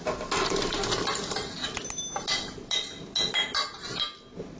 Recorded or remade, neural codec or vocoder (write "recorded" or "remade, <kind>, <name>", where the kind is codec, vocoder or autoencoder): recorded